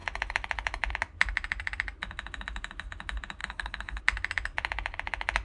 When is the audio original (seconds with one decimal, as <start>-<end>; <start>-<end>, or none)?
0.0-3.4; 4.0-5.4